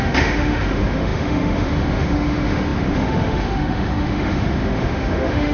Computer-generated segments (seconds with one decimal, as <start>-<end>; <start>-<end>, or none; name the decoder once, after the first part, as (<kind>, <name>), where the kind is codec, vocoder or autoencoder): 0.0-5.5 (autoencoder, DAC-VAE)